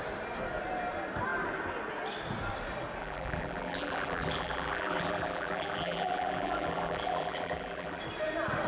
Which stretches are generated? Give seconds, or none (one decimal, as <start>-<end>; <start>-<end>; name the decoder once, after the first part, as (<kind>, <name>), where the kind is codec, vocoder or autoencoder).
3.0-8.0 (vocoder, BigVGAN v2)